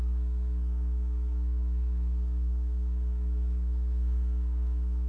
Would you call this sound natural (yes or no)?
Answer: no